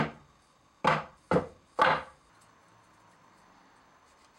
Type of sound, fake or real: real